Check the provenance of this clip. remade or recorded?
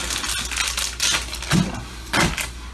recorded